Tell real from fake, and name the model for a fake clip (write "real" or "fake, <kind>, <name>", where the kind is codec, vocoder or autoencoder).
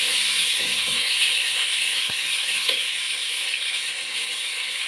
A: fake, codec, SNAC